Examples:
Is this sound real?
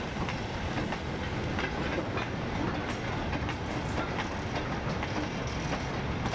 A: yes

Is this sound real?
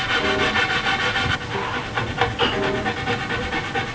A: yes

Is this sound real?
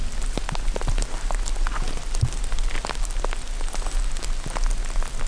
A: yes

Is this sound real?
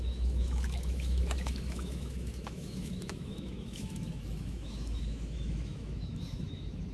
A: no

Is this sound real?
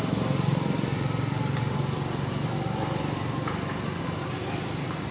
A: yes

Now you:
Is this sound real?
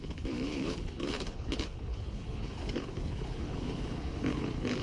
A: no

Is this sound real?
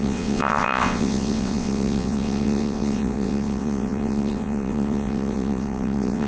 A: no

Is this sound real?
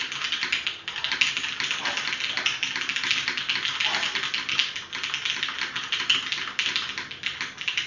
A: yes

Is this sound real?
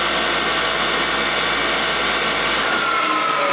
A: yes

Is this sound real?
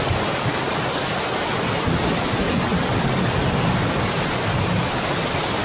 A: yes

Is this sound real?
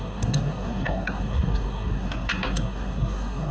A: no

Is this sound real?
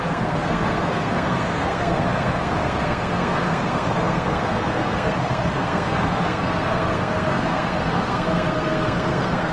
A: no